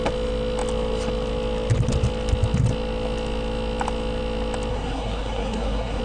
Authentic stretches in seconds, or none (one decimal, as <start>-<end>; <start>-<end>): 0.0-4.7